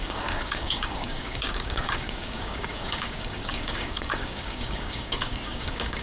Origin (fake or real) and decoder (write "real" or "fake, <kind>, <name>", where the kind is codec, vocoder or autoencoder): fake, codec, DAC